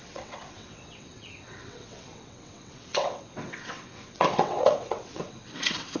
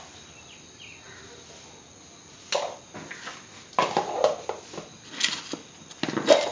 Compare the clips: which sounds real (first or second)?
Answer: second